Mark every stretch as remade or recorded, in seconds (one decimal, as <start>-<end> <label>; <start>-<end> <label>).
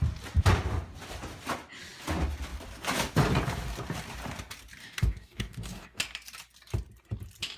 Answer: 0.0-4.8 recorded; 4.8-6.0 remade; 6.0-7.6 recorded